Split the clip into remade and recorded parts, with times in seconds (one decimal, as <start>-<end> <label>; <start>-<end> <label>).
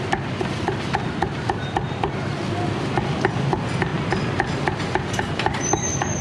0.0-2.3 remade; 2.3-3.1 recorded; 3.1-6.2 remade